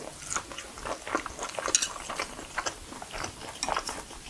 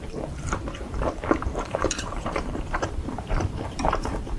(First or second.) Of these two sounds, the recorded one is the first